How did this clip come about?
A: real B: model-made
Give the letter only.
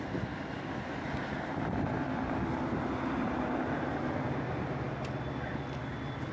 A